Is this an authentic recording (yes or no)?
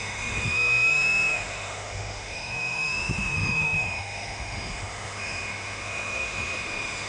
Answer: no